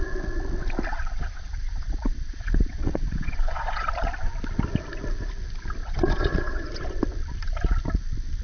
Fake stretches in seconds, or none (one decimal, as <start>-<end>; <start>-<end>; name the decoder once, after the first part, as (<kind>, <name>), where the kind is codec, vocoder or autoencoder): 0.9-3.9 (vocoder, Vocos); 5.8-7.0